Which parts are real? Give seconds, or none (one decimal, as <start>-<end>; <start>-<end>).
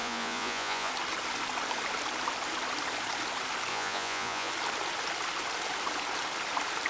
0.9-3.7; 4.5-6.9